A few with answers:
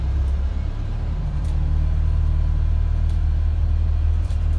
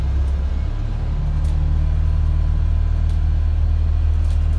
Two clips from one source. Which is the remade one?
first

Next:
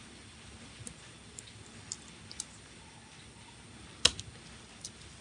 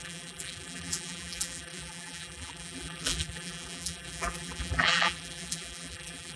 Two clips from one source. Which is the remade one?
second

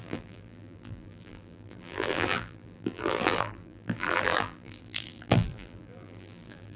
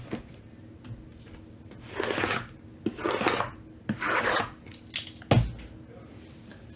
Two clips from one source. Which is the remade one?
first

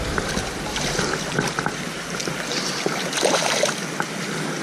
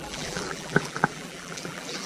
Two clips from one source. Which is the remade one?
second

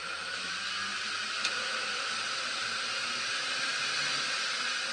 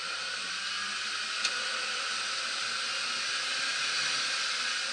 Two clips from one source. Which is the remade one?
first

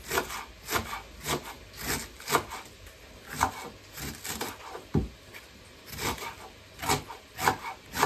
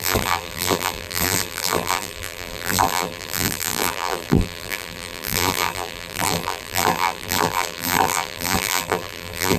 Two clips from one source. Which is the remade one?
second